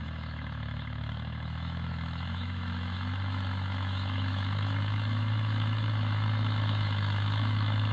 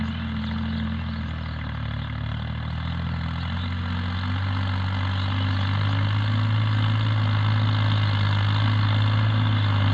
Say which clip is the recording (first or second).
second